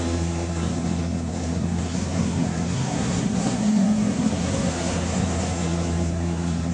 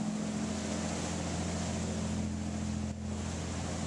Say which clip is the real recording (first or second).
second